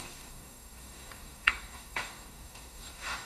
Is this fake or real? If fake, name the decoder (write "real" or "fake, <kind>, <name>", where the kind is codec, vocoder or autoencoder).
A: fake, codec, DAC